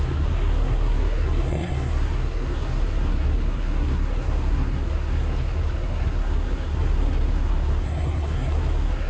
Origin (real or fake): fake